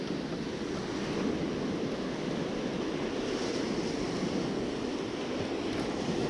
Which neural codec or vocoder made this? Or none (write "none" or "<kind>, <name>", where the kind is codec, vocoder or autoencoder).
none